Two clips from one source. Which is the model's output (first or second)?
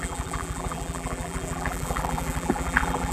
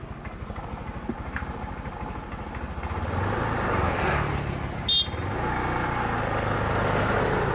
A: first